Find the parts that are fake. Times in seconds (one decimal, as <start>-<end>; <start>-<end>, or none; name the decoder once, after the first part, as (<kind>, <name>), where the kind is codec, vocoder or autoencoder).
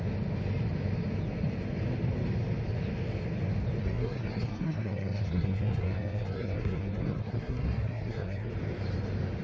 3.8-8.5 (codec, SNAC)